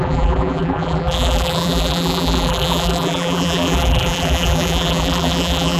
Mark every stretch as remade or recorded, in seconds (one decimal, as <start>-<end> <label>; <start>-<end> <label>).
0.0-5.8 remade